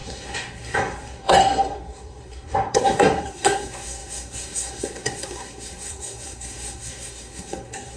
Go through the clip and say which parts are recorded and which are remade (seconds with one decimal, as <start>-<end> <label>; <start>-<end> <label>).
0.0-8.0 remade